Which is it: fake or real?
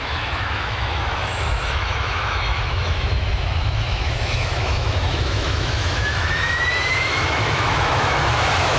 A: fake